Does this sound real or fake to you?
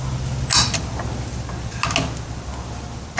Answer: real